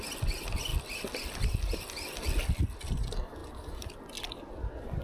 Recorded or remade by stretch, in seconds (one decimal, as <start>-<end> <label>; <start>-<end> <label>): 0.0-5.0 recorded